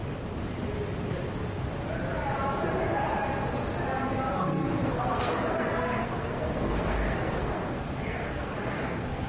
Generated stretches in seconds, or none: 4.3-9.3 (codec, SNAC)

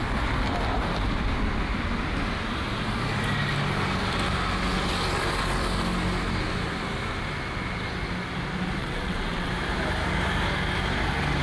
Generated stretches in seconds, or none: 8.8-9.5 (vocoder, WaveNeXt)

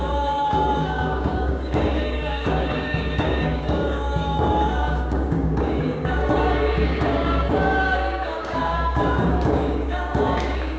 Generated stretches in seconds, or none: 0.0-10.8 (codec, DAC)

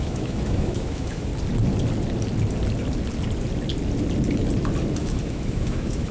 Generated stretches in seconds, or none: 0.0-1.3 (autoencoder, DAC-VAE); 5.0-6.1

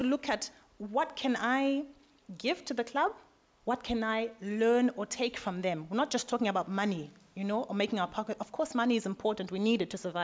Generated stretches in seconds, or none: none

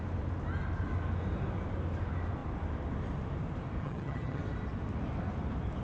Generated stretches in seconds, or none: 3.8-4.4 (vocoder, HiFi-GAN)